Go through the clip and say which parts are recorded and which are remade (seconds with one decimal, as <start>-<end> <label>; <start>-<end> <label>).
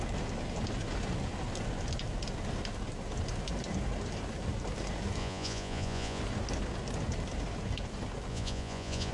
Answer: 0.0-5.2 recorded; 5.2-6.2 remade; 6.2-8.3 recorded; 8.3-9.1 remade